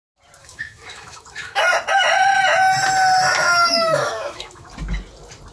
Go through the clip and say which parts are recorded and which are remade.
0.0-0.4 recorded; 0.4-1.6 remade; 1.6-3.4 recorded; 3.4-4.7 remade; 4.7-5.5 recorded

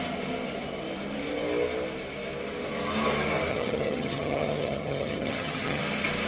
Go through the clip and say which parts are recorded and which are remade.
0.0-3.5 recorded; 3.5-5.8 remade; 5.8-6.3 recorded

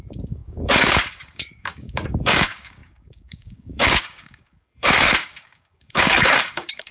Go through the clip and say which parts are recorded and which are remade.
0.0-6.9 remade